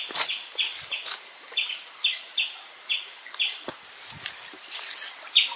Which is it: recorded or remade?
recorded